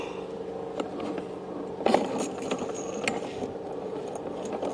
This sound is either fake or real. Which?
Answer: real